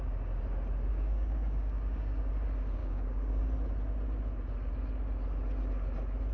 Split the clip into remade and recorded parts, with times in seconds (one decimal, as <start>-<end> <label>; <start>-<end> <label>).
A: 0.0-0.9 recorded; 0.9-2.3 remade; 2.3-2.8 recorded; 2.8-3.4 remade; 3.4-6.3 recorded